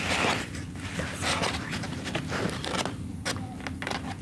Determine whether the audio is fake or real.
real